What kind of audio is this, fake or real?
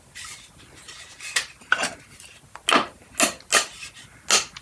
real